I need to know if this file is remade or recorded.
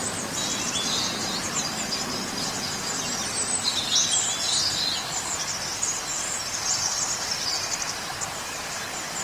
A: recorded